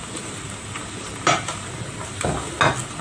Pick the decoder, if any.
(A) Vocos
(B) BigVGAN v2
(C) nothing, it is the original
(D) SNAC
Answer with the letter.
C